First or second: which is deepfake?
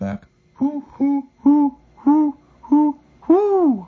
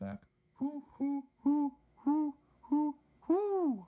second